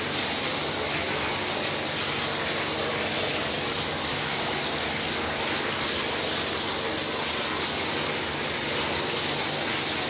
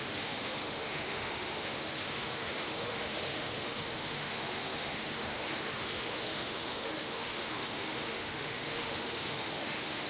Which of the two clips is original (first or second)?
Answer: first